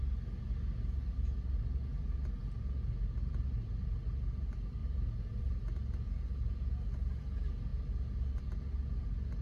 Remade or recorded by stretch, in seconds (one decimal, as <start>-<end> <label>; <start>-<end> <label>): 0.0-9.4 recorded